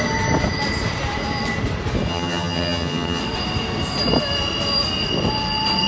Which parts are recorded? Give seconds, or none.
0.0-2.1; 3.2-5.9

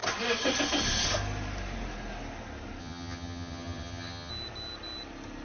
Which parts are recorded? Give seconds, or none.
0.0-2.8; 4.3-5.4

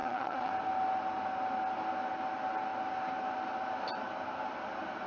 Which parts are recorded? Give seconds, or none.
0.5-5.1

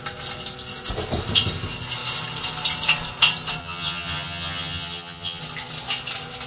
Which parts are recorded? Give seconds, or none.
0.0-3.6; 5.4-6.5